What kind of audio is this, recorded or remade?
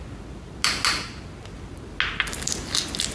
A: recorded